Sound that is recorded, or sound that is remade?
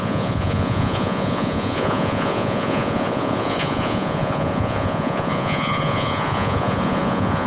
remade